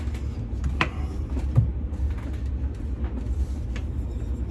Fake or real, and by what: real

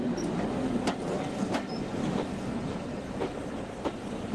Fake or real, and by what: real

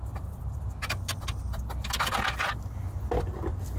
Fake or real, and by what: real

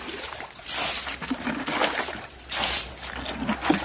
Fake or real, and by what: real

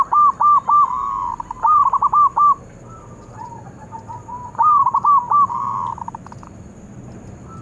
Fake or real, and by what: real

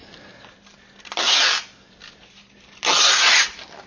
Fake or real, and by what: real